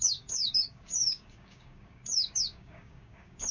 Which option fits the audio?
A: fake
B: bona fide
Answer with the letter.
A